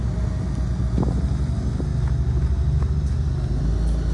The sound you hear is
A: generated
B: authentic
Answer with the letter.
B